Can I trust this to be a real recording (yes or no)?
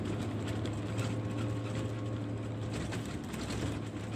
yes